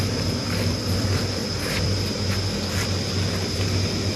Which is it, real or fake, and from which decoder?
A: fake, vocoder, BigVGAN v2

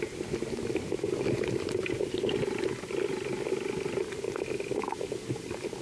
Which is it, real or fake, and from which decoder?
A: real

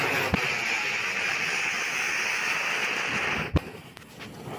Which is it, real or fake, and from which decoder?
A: real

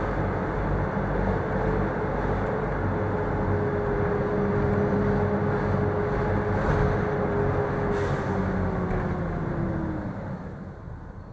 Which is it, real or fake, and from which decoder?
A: real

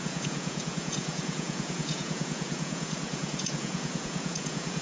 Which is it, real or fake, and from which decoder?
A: fake, vocoder, Vocos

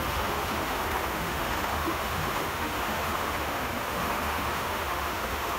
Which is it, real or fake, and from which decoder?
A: fake, autoencoder, DAC-VAE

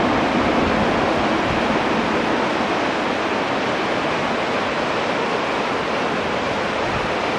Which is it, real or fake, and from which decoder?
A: real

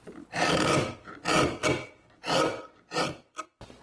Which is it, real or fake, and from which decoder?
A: real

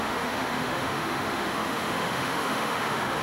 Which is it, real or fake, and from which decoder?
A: fake, autoencoder, DAC-VAE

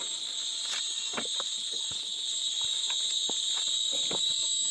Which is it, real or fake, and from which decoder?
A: real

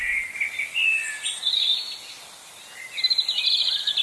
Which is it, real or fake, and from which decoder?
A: real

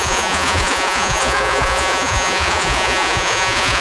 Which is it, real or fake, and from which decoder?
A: fake, vocoder, Vocos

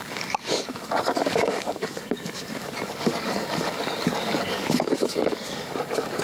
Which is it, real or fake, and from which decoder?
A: fake, codec, DAC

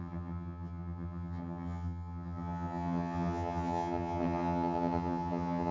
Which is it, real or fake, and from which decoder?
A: fake, vocoder, HiFi-GAN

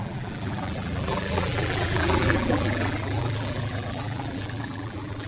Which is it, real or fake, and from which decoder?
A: fake, vocoder, BigVGAN v2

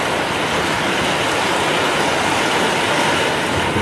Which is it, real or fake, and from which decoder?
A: real